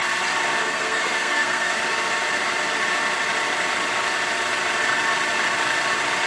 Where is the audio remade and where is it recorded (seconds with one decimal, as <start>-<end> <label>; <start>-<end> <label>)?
0.0-0.6 recorded; 0.6-1.8 remade; 1.8-6.3 recorded